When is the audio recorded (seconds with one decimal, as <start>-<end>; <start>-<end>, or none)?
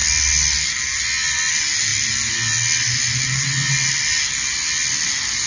0.0-5.5